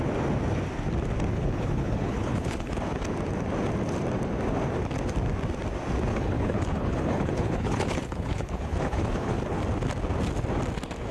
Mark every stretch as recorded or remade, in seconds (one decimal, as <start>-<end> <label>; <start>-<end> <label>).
0.0-1.3 recorded; 1.3-2.8 remade; 2.8-6.1 recorded; 6.1-9.6 remade; 9.6-11.1 recorded